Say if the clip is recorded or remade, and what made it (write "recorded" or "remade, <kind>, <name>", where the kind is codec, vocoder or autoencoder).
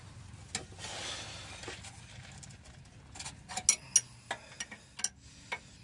recorded